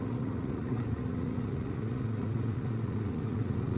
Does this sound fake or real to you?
fake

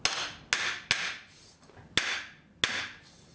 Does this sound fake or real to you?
real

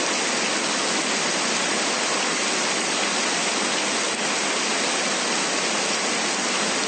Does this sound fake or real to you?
real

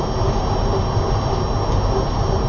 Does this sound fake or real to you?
real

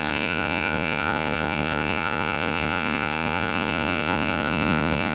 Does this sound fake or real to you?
fake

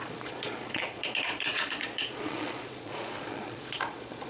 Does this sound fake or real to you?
fake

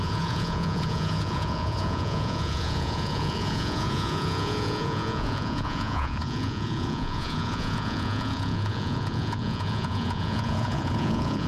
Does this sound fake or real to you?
fake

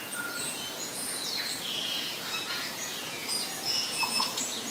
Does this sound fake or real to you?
fake